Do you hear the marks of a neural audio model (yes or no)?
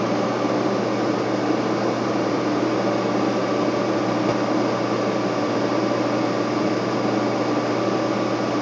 no